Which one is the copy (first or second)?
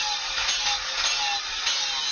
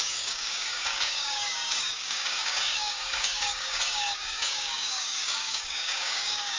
second